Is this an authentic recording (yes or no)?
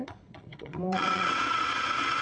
no